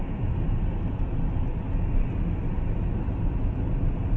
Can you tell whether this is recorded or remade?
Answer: recorded